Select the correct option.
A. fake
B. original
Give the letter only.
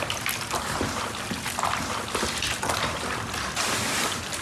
B